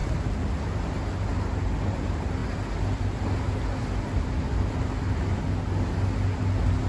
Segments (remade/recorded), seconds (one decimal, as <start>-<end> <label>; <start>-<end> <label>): 0.0-6.9 recorded